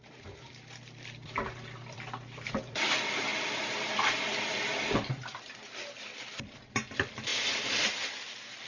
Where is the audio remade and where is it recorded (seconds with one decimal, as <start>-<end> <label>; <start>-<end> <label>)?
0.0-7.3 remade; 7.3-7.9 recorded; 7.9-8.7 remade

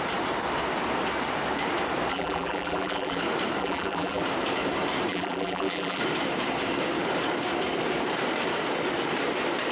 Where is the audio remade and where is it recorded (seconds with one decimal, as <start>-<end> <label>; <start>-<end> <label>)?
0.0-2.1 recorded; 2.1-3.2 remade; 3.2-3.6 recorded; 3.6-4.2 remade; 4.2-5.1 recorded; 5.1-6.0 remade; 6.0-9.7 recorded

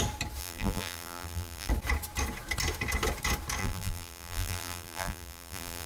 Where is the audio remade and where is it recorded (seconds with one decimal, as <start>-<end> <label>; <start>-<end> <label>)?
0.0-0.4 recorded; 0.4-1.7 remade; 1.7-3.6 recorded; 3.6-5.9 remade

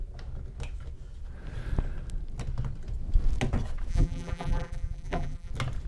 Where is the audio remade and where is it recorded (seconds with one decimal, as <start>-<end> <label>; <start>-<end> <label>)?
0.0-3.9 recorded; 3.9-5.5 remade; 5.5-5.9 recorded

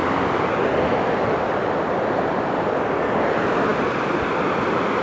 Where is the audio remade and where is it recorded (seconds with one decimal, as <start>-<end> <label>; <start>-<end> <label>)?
0.0-5.0 recorded